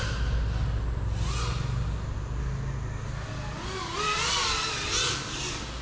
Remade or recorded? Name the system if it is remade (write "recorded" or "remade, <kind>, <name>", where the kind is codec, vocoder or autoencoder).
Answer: recorded